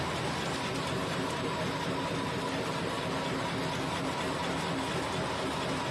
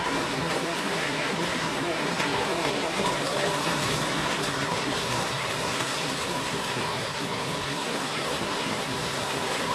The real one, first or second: first